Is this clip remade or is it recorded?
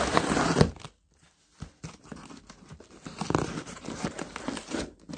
recorded